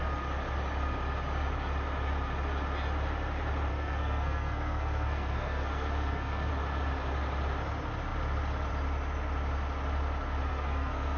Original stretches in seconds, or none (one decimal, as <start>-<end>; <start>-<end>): 0.0-3.7; 6.5-10.5